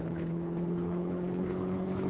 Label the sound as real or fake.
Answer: fake